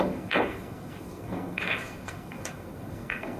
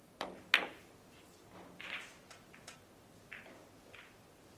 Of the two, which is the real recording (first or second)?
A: second